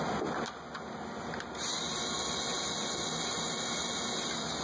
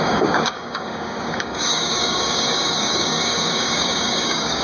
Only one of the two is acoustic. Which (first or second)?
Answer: first